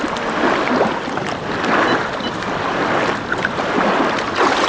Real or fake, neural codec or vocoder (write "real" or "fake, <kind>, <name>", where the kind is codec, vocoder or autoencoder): real